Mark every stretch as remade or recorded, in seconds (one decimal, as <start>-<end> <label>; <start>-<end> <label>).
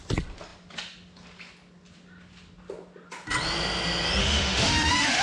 0.0-4.2 recorded; 4.2-5.2 remade